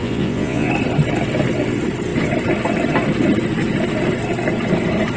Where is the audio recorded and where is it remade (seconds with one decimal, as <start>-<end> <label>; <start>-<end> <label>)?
0.0-0.7 remade; 0.7-5.2 recorded